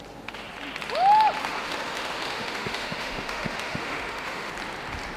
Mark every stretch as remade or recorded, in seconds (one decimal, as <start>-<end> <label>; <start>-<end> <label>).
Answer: 0.0-1.4 recorded; 1.4-4.5 remade; 4.5-5.2 recorded